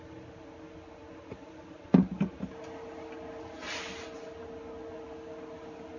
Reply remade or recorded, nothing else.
recorded